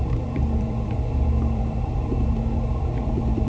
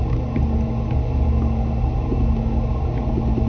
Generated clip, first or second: first